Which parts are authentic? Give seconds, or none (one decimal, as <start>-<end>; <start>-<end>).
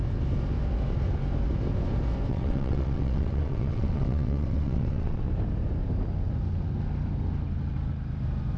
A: 0.0-2.3; 5.3-8.6